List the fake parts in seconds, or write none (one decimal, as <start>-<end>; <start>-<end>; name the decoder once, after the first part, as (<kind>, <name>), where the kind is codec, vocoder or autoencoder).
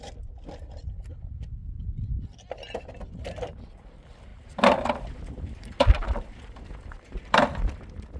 0.0-4.3 (vocoder, BigVGAN v2); 5.0-8.2